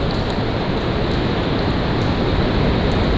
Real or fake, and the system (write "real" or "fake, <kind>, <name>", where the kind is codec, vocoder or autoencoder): real